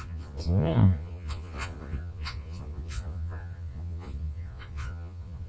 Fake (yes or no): yes